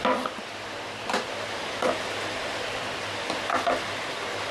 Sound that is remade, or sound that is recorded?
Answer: recorded